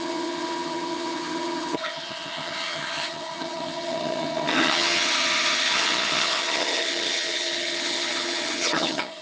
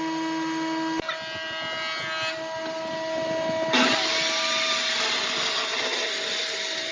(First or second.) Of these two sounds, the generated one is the first